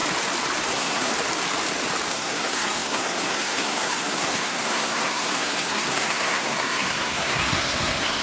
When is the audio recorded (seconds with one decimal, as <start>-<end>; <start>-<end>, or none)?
0.0-0.7; 1.1-2.1